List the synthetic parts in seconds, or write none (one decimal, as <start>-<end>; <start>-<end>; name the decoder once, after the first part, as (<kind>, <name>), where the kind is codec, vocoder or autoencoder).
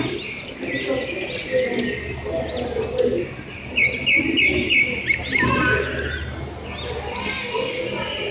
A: 7.2-7.7 (codec, SNAC)